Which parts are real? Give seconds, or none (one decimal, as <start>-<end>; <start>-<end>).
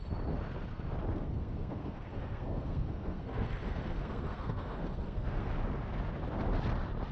0.0-1.2; 5.5-7.1